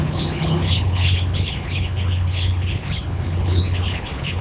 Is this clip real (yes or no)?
no